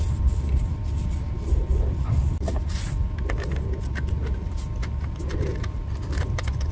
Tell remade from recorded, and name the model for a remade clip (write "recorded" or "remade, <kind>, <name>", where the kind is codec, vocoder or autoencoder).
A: recorded